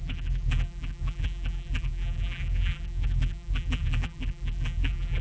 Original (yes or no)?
no